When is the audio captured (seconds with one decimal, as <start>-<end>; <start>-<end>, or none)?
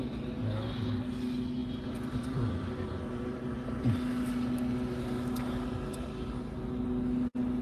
0.0-1.6; 3.9-7.6